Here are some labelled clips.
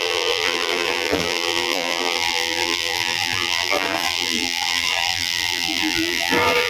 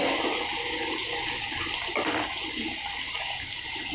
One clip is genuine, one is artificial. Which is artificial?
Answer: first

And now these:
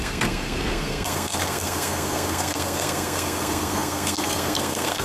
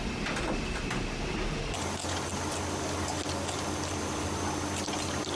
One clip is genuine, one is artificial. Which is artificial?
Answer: first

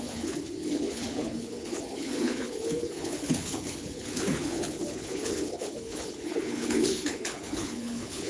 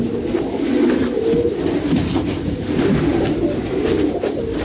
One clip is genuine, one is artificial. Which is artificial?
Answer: first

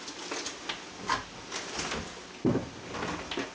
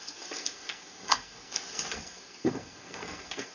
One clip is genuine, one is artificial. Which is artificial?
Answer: second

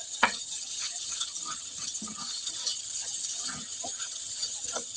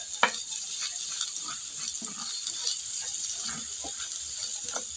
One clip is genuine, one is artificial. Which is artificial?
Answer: first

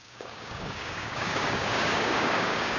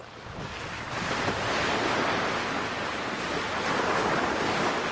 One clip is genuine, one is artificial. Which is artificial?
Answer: first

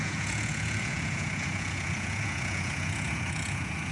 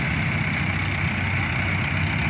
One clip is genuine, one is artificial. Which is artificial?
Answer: first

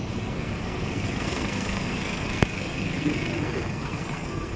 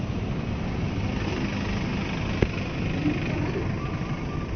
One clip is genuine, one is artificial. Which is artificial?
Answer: first